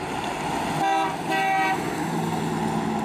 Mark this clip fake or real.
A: real